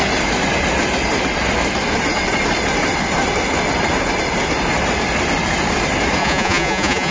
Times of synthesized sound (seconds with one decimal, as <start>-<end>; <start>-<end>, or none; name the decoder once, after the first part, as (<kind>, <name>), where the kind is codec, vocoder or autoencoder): 6.2-7.1 (vocoder, Vocos)